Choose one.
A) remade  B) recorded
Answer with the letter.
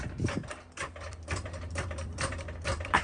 A